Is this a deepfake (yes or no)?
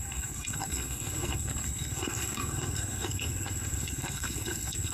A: yes